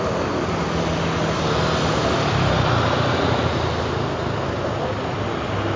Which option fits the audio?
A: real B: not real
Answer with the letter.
A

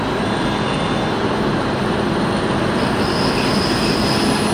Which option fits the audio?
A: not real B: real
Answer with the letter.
B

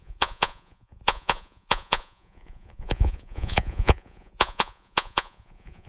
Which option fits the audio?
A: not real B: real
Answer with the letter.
A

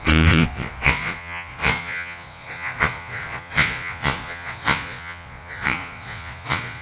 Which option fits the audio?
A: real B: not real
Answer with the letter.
B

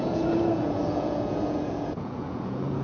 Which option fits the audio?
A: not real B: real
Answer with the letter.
A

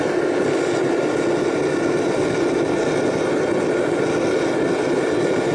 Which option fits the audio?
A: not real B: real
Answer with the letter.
B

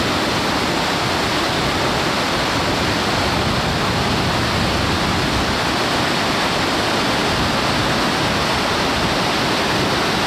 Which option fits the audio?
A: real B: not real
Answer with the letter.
A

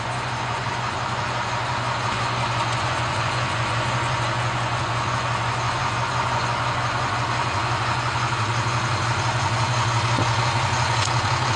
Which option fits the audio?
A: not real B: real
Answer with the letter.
A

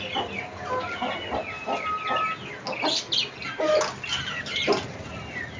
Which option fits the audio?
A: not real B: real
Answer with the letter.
B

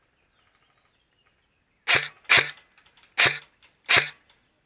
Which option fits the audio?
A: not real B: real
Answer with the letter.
B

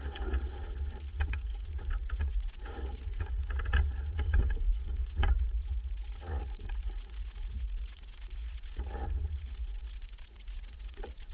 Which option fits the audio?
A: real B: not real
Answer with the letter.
B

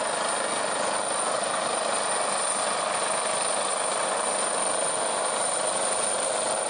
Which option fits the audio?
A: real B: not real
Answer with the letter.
A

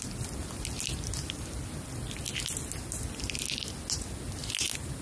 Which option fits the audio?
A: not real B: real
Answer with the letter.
B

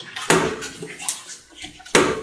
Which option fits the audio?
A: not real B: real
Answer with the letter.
B